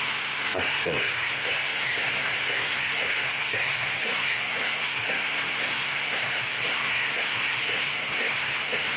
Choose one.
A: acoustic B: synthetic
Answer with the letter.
B